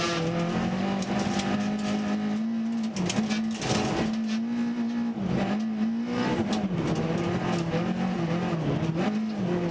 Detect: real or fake real